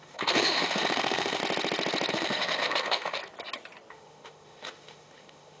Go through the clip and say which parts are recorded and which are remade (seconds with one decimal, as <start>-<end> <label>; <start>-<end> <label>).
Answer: 0.0-1.4 remade; 1.4-2.1 recorded; 2.1-3.2 remade; 3.2-3.9 recorded; 3.9-5.6 remade